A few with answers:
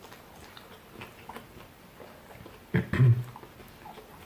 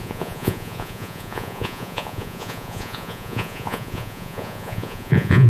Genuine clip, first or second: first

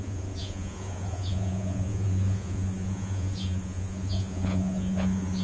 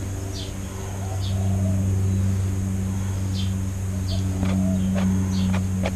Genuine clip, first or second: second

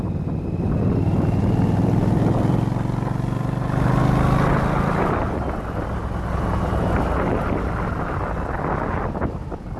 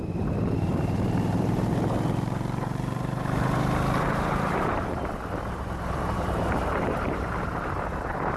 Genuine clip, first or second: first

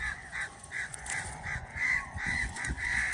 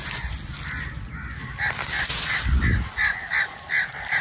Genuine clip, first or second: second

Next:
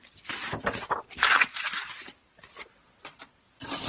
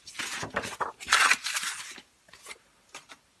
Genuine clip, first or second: first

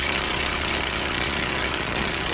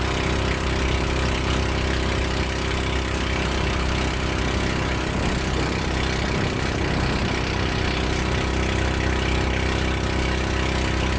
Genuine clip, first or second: second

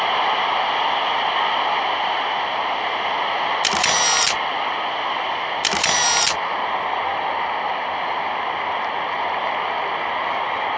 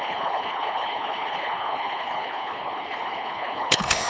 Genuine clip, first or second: first